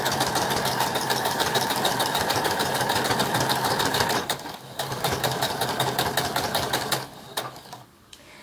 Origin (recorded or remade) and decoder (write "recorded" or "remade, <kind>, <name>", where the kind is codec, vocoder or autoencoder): remade, codec, DAC